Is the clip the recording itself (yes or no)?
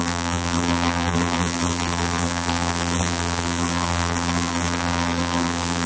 no